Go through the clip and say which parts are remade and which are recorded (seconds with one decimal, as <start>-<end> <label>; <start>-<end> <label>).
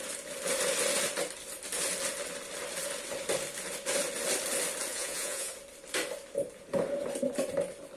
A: 0.0-4.9 recorded; 4.9-5.5 remade; 5.5-8.0 recorded